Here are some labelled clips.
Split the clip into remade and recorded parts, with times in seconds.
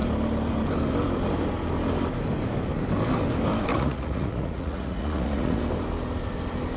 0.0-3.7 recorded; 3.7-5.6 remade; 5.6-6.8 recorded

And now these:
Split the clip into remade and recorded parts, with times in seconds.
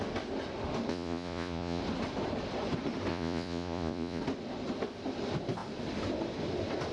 0.0-0.9 recorded; 0.9-1.8 remade; 1.8-3.1 recorded; 3.1-4.2 remade; 4.2-6.9 recorded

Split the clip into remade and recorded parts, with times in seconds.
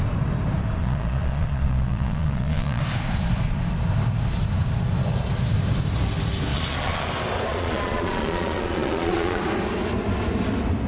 0.0-0.8 recorded; 0.8-2.8 remade; 2.8-6.5 recorded; 6.5-7.1 remade; 7.1-7.5 recorded; 7.5-9.4 remade; 9.4-10.9 recorded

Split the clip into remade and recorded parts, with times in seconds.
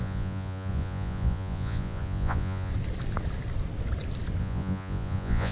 0.0-2.7 remade; 2.7-4.4 recorded; 4.4-5.5 remade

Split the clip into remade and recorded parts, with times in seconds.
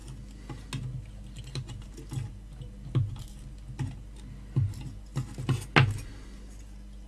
0.0-7.1 recorded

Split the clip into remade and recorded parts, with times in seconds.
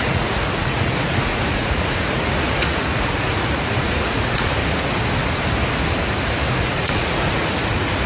0.0-4.6 remade; 4.6-6.5 recorded; 6.5-8.1 remade